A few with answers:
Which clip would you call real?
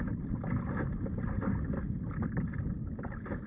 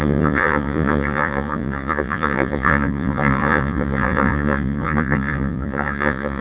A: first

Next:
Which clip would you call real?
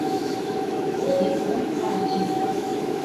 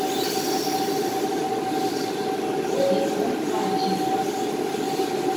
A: second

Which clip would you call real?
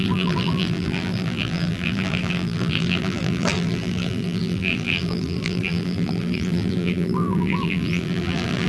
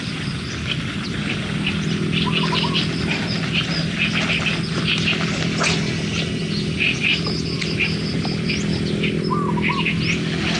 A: second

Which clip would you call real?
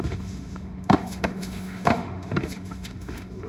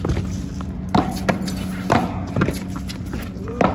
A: second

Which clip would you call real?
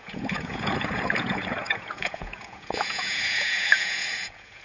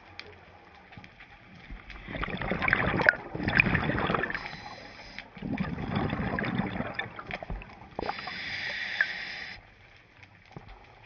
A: second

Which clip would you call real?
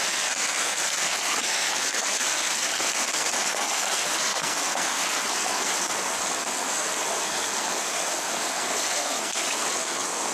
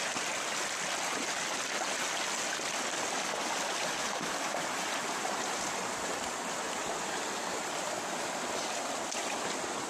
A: second